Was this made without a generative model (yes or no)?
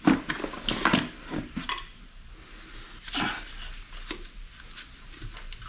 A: yes